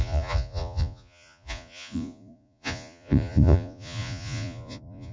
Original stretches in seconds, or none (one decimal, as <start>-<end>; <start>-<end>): none